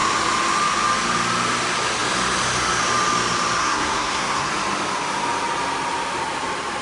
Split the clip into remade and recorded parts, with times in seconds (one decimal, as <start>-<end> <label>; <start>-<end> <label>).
0.0-3.6 recorded; 3.6-4.5 remade; 4.5-6.8 recorded